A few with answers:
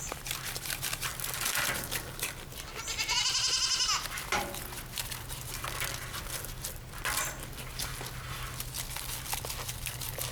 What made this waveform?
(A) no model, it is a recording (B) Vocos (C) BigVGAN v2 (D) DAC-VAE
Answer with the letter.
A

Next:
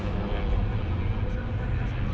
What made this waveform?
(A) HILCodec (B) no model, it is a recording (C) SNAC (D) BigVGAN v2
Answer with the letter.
B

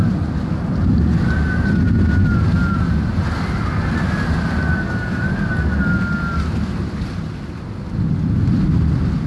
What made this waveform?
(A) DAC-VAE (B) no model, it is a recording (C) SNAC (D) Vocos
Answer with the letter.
B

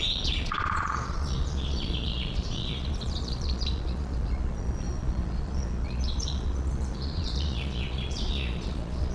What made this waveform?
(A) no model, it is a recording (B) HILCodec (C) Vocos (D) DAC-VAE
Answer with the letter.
C